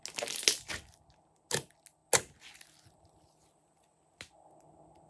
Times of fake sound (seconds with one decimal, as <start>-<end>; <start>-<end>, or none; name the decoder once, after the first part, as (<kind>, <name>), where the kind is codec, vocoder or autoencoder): none